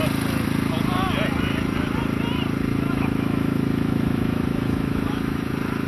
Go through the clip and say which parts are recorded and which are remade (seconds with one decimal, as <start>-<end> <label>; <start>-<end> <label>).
0.0-2.7 recorded; 2.7-5.5 remade; 5.5-5.9 recorded